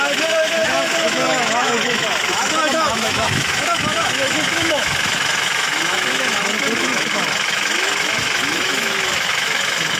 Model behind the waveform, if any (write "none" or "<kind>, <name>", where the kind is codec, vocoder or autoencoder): autoencoder, DAC-VAE